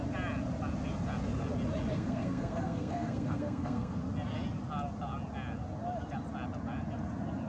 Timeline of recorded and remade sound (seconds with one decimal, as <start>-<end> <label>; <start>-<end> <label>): 0.0-1.9 recorded; 1.9-4.0 remade; 4.0-7.5 recorded